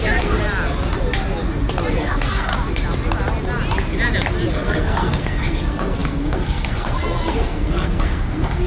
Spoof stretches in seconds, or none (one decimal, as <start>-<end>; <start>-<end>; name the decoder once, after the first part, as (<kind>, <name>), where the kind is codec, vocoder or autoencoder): 0.0-0.4 (codec, SNAC); 1.9-2.5; 4.5-8.7